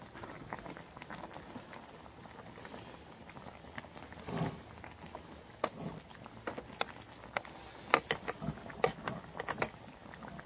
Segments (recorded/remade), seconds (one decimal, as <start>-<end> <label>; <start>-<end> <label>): 0.0-10.5 recorded